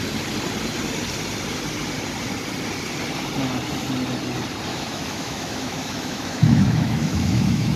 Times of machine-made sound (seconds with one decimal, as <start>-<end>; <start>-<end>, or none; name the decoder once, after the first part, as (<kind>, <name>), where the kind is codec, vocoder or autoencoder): 4.7-7.8 (autoencoder, DAC-VAE)